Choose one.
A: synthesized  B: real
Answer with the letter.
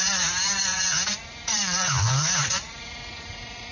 A